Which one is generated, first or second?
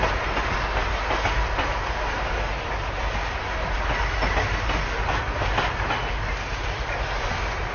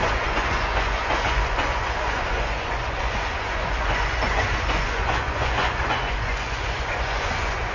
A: second